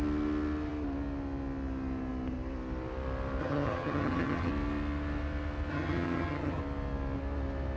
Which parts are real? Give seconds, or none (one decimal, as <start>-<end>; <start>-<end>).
0.0-3.4; 4.5-5.7; 6.6-7.8